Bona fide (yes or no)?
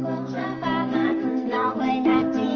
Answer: no